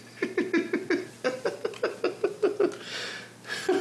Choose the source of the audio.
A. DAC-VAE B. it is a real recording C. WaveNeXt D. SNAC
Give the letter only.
B